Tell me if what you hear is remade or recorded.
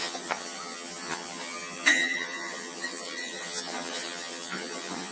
remade